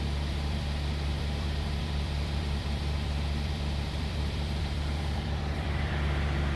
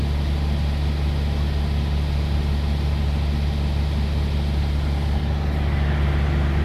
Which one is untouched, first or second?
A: second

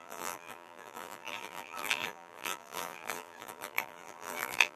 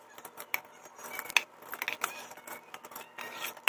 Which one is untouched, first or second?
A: second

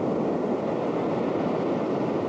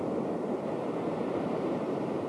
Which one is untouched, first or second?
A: first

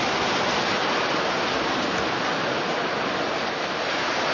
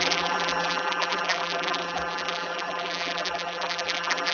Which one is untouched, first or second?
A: first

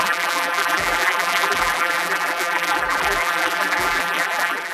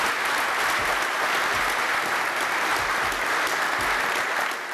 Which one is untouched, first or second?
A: second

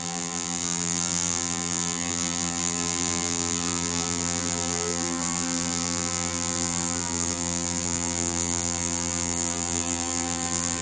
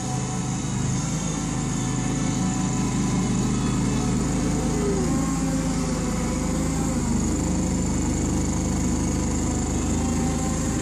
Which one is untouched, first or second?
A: second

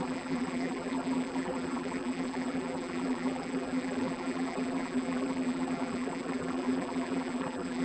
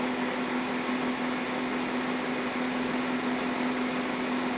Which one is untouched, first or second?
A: second